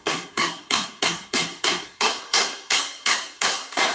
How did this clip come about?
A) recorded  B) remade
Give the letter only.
B